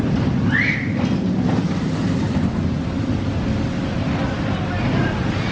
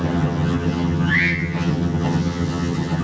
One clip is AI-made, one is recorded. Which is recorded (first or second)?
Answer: first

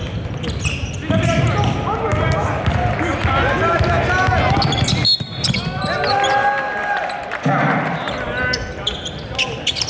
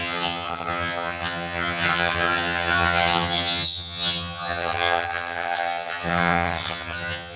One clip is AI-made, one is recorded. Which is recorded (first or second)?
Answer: first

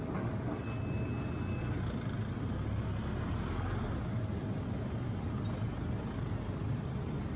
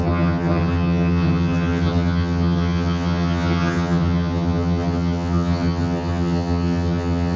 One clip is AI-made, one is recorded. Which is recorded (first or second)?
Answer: first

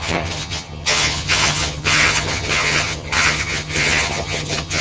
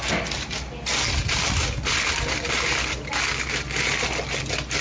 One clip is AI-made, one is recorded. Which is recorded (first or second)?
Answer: second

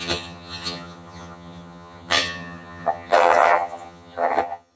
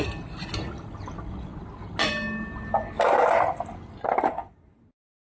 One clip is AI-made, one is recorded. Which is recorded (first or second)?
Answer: second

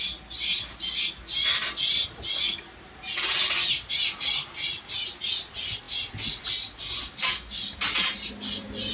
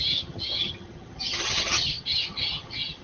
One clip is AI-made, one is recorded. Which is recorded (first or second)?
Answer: first